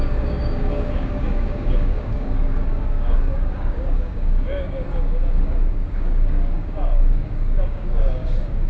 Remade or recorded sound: remade